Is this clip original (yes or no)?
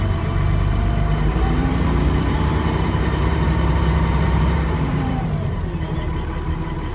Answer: no